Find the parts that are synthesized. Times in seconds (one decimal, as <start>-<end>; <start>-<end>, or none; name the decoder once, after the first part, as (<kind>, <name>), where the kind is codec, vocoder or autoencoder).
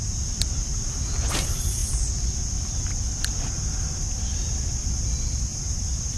0.7-1.2 (vocoder, BigVGAN v2); 5.5-6.2